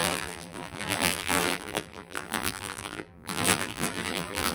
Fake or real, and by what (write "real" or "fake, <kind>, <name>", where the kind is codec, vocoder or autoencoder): fake, vocoder, BigVGAN v2